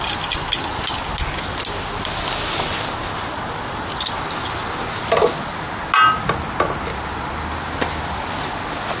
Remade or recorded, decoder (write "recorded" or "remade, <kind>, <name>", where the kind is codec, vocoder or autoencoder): recorded